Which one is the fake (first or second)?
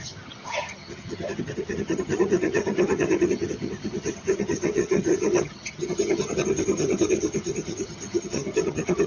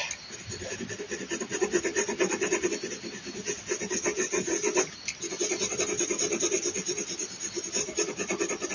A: first